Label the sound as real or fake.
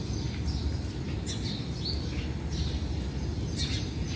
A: real